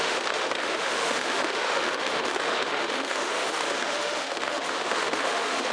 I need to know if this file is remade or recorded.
remade